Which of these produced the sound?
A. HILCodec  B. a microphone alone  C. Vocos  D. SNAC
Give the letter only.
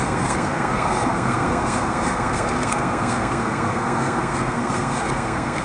D